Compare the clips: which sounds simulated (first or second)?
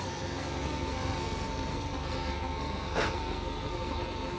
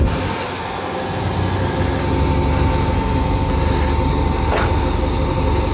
first